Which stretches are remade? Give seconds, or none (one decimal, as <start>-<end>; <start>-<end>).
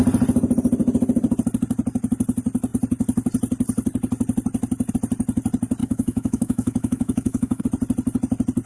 5.8-7.6